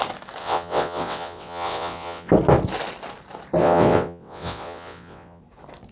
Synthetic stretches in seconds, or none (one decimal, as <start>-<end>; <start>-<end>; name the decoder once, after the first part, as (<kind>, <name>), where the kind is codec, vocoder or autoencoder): 0.4-2.3 (vocoder, WaveNeXt); 3.6-5.4

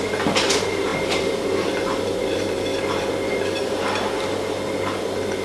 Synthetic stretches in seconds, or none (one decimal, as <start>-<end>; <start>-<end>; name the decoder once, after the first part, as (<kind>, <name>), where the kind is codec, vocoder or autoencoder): none

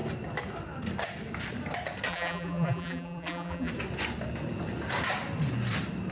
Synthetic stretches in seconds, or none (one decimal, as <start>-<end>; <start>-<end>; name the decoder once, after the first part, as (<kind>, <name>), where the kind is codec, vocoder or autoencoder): 2.1-3.7 (vocoder, BigVGAN v2)